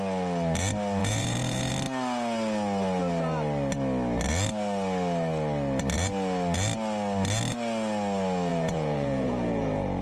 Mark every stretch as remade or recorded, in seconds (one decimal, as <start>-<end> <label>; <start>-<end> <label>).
0.0-1.0 recorded; 1.0-1.7 remade; 1.7-8.5 recorded; 8.5-10.0 remade